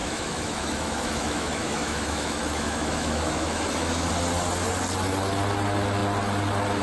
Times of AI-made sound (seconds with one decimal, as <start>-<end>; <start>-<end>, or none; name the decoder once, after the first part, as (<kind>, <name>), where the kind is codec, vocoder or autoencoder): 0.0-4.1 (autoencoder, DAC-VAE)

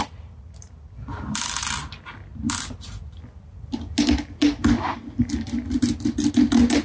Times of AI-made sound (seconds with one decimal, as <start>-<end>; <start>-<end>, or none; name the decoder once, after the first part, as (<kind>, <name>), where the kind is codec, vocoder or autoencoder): none

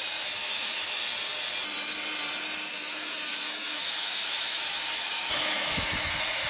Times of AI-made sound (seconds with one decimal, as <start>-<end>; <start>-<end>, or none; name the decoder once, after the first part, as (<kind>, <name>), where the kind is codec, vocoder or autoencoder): 0.4-1.0 (autoencoder, DAC-VAE); 2.7-6.1

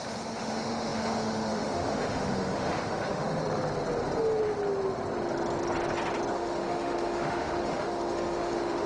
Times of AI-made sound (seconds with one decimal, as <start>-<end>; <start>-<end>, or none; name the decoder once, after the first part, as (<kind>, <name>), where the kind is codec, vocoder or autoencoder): 0.0-3.4 (autoencoder, DAC-VAE); 6.3-8.9

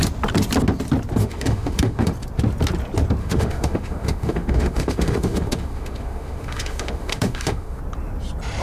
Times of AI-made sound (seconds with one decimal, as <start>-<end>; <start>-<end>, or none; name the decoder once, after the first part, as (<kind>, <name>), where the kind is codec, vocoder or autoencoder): 1.2-2.1 (autoencoder, DAC-VAE); 3.2-7.8

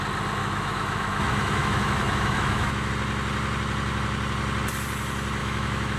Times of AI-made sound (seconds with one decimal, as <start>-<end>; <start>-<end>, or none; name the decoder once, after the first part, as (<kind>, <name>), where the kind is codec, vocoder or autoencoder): 0.4-2.9 (autoencoder, DAC-VAE); 5.4-6.0

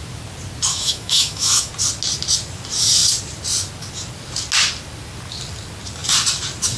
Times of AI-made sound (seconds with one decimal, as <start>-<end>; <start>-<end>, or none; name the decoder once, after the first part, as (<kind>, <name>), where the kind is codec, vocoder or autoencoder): 0.7-1.7 (autoencoder, DAC-VAE)

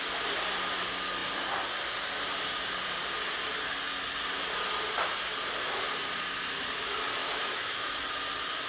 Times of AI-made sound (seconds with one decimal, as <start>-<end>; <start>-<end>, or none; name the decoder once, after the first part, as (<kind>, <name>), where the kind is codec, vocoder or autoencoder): 7.2-8.0 (autoencoder, DAC-VAE)